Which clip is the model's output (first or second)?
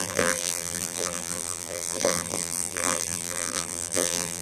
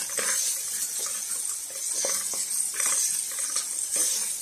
first